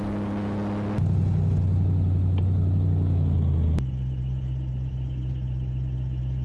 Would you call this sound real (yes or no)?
yes